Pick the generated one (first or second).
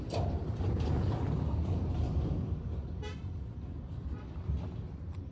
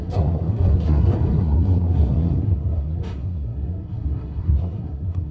second